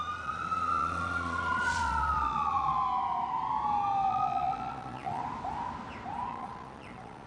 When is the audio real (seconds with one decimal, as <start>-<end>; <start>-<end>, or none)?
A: 2.8-4.1; 5.2-6.3